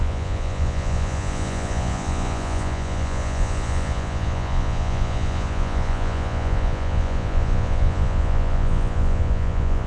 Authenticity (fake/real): fake